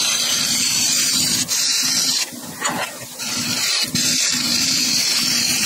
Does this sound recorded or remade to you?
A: remade